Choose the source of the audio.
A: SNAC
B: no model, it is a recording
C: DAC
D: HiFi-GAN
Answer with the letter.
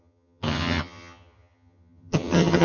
D